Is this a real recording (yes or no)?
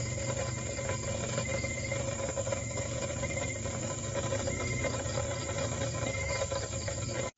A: yes